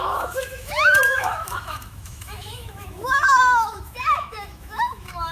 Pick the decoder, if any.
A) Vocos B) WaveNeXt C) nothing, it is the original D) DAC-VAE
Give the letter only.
D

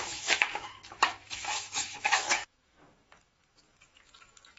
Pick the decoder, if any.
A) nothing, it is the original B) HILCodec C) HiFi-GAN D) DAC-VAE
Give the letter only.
D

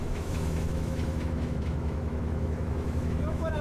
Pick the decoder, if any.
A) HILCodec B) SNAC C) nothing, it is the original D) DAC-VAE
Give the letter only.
D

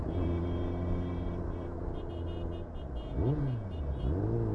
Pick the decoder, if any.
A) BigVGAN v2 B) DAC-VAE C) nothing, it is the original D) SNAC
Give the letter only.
C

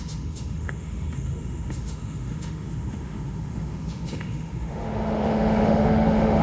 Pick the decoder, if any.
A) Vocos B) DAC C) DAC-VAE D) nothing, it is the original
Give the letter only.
C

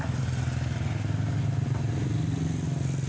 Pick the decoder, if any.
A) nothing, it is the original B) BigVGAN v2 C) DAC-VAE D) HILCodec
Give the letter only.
A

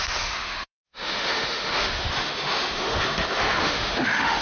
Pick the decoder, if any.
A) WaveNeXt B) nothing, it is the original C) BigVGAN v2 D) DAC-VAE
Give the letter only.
D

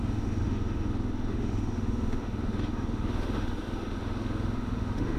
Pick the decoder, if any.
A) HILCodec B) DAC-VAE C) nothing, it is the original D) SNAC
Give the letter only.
B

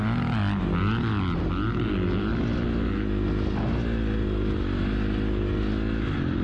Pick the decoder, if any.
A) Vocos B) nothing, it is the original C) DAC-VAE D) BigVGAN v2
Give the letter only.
B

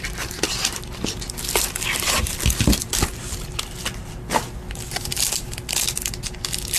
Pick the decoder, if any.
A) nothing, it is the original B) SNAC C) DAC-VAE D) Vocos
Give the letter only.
A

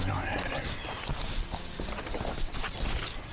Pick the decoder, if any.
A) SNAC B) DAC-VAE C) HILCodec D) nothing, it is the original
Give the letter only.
D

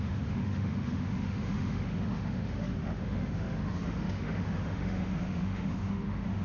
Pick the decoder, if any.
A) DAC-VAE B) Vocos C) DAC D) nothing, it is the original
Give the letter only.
A